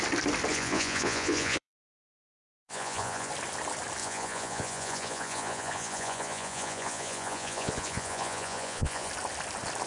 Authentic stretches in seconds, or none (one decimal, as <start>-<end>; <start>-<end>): 0.0-0.5; 3.3-4.0; 9.1-9.9